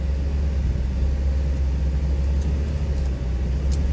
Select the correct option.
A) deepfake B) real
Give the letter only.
B